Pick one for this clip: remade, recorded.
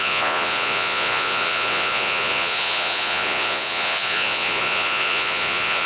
remade